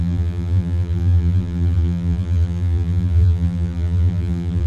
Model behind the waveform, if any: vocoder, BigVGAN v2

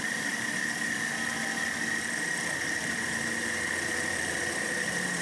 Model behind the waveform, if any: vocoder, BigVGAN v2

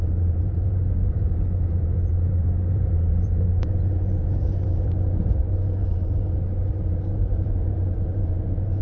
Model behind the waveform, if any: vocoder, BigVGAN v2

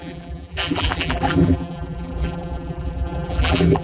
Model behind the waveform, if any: vocoder, BigVGAN v2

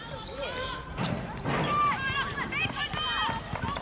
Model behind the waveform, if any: vocoder, BigVGAN v2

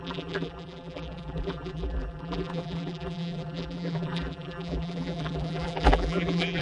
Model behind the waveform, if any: vocoder, BigVGAN v2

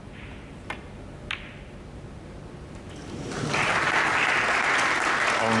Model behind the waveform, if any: none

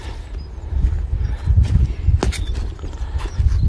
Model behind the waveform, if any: none